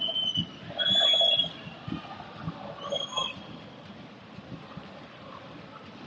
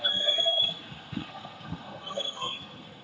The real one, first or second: first